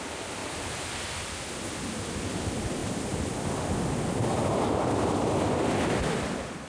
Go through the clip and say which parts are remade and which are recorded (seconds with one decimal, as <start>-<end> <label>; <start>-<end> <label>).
0.0-0.4 recorded; 0.4-0.9 remade; 0.9-6.7 recorded